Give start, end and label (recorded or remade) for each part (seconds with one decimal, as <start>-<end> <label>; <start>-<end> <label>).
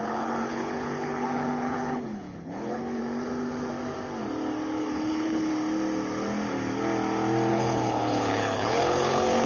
0.0-3.0 remade; 3.0-4.8 recorded; 4.8-5.5 remade; 5.5-7.5 recorded; 7.5-9.5 remade